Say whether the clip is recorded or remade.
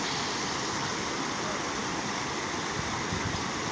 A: remade